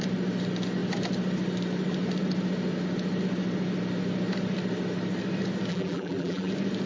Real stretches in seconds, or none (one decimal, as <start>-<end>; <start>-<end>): 0.0-5.7; 6.5-6.9